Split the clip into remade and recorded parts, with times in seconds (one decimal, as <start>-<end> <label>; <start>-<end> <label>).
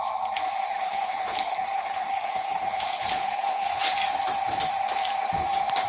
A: 0.0-0.7 recorded; 0.7-3.8 remade; 3.8-5.9 recorded